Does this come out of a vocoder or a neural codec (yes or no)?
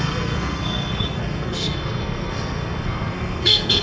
yes